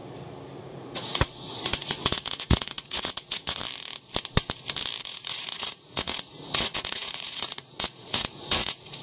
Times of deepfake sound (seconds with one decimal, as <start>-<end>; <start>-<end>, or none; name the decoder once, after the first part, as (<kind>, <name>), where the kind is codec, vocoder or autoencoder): 0.6-3.6 (vocoder, Vocos); 5.0-9.0